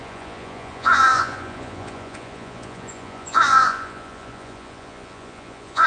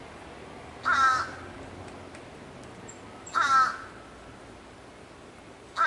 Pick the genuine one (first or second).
second